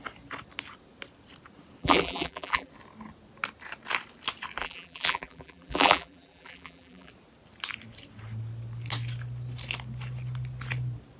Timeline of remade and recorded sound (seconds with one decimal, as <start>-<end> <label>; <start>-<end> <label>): 0.0-1.8 recorded; 1.8-2.7 remade; 2.7-4.6 recorded; 4.6-7.1 remade; 7.1-11.2 recorded